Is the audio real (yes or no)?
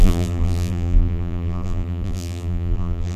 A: no